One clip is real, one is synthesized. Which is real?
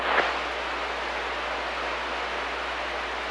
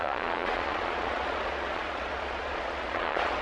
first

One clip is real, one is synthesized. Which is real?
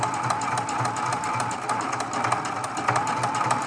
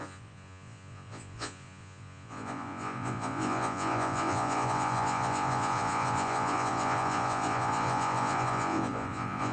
first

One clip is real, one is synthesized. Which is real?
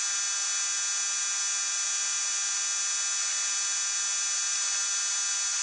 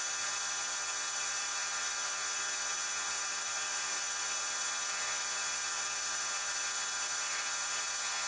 first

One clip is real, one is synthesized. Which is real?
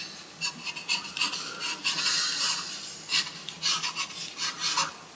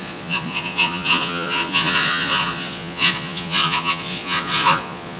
first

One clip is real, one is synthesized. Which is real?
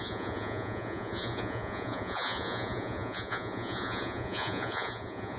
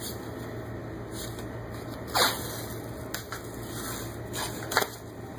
second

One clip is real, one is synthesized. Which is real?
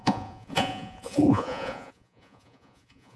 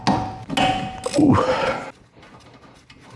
second